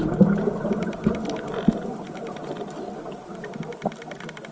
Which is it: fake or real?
real